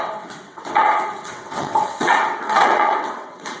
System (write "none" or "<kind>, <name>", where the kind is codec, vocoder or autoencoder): vocoder, WaveNeXt